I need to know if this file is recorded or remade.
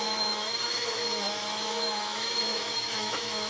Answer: remade